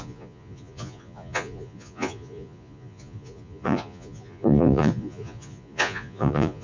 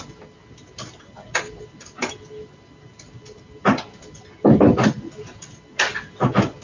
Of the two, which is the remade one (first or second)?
first